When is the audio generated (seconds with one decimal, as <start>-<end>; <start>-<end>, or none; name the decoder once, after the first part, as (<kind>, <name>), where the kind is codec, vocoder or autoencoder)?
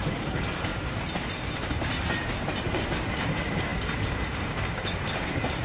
0.0-0.7 (codec, DAC); 2.7-5.6